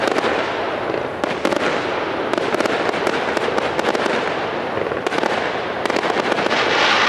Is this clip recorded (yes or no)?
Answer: yes